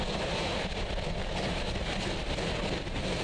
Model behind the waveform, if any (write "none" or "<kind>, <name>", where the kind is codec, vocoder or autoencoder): vocoder, BigVGAN v2